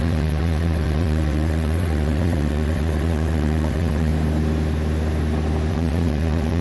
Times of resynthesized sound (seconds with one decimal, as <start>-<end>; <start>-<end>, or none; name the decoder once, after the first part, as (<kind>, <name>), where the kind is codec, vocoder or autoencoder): 0.0-4.1 (vocoder, WaveNeXt); 5.7-6.6